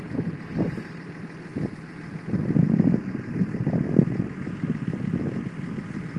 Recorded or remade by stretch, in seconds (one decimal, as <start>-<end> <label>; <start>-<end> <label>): 0.0-6.2 recorded